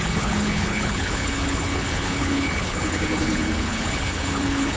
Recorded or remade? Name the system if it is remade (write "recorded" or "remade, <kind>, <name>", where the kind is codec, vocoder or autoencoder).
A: remade, codec, HILCodec